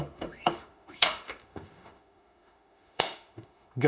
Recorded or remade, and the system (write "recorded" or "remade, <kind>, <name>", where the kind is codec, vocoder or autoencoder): remade, autoencoder, DAC-VAE